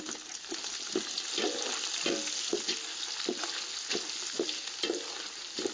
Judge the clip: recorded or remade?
recorded